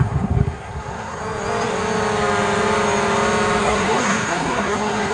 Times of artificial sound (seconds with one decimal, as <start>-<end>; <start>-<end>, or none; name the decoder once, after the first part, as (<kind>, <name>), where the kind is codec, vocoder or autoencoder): 0.0-1.2 (codec, SNAC); 3.6-5.1